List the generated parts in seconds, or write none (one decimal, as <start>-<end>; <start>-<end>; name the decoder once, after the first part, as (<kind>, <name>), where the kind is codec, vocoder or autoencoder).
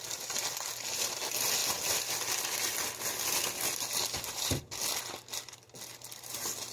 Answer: none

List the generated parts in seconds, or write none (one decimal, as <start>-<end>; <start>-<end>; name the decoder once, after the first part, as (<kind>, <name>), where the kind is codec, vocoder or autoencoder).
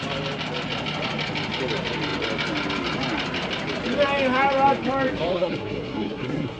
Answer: 5.3-6.6 (codec, SNAC)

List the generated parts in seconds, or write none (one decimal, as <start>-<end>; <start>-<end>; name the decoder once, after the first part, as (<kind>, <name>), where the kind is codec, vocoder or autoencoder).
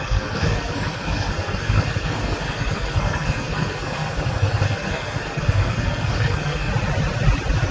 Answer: 0.0-6.7 (codec, SNAC)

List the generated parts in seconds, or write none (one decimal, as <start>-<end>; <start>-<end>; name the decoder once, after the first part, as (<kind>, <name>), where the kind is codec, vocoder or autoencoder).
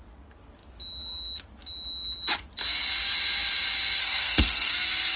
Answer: 4.0-4.7 (codec, SNAC)